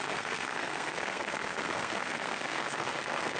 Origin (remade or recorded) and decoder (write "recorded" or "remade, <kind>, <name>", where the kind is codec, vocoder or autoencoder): remade, codec, SNAC